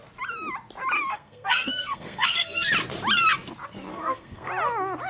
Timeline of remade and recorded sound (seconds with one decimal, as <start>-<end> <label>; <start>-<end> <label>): 0.0-1.1 recorded; 1.1-2.7 remade; 2.7-3.9 recorded; 3.9-4.5 remade; 4.5-5.1 recorded